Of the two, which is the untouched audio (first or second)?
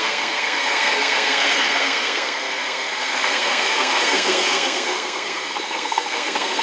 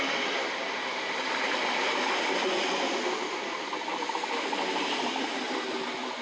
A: second